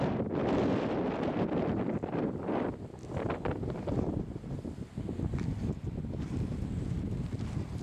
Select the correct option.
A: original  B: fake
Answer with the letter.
A